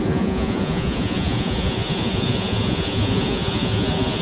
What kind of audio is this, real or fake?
fake